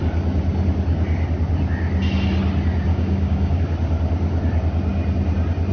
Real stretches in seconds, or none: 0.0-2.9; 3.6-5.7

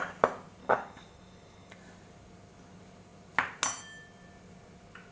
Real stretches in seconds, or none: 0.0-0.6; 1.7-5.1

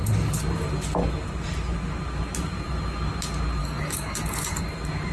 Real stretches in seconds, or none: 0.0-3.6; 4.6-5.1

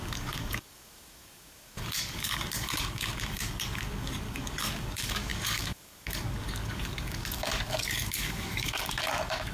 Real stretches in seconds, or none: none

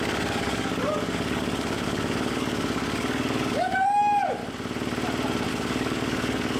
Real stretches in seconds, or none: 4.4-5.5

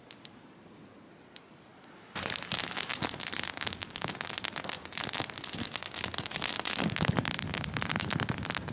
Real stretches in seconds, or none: 0.0-3.5; 4.3-8.7

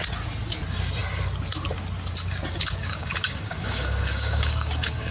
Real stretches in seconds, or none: 0.0-2.8

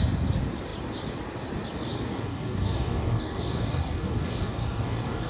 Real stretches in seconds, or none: 0.0-2.1